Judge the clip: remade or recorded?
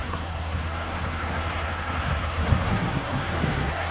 remade